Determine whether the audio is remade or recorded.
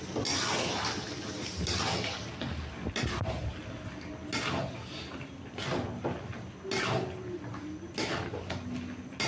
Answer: recorded